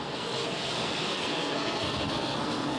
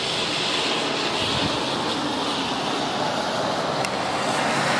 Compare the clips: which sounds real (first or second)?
second